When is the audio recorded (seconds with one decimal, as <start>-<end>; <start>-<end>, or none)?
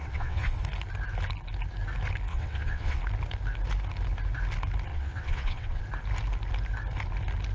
0.6-2.3; 3.0-4.9; 5.8-7.5